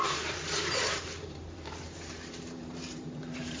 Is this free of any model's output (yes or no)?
no